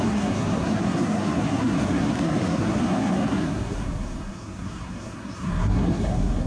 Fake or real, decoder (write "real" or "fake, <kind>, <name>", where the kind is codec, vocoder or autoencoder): fake, codec, SNAC